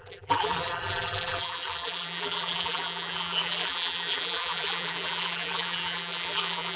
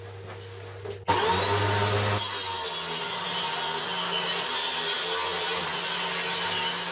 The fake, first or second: first